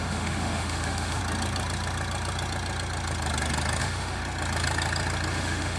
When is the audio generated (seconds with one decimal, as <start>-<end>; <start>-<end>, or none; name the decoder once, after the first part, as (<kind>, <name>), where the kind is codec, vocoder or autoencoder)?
0.0-1.2 (autoencoder, DAC-VAE); 3.8-4.2; 5.3-5.8